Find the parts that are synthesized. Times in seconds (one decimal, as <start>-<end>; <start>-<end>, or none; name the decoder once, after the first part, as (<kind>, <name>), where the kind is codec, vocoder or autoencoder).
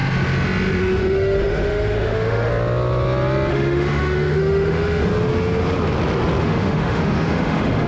0.8-2.5 (autoencoder, DAC-VAE); 3.5-5.1; 6.4-7.9